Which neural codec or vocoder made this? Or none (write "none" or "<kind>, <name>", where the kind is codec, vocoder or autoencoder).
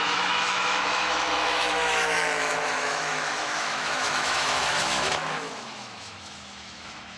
autoencoder, DAC-VAE